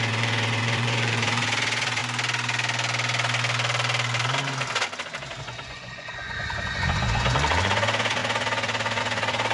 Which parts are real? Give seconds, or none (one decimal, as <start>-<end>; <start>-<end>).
2.0-5.4